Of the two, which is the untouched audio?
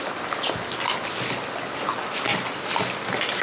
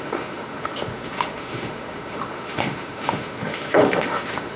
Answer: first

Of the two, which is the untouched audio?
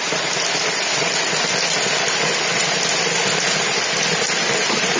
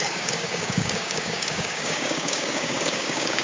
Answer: first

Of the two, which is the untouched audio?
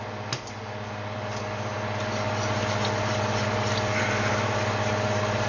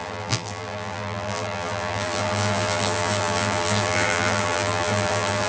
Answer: first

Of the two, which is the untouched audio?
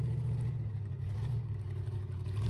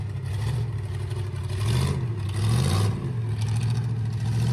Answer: second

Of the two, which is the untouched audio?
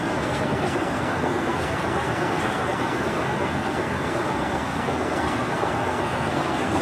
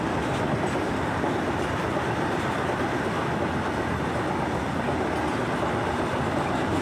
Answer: second